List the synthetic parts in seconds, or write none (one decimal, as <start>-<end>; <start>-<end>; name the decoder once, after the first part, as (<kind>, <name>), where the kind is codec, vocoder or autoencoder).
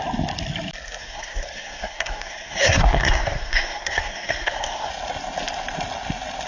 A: 1.0-4.9 (codec, SNAC)